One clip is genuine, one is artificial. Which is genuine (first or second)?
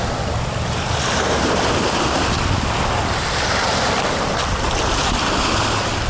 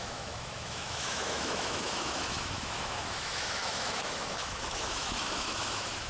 first